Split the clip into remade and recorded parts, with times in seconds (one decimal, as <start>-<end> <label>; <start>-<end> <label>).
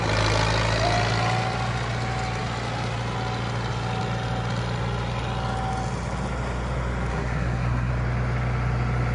0.0-7.1 recorded; 7.1-7.9 remade; 7.9-9.1 recorded